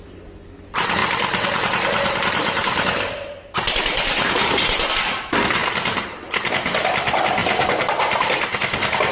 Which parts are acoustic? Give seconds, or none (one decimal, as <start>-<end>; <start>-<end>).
0.0-9.1